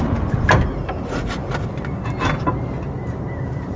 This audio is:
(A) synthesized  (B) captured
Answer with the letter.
B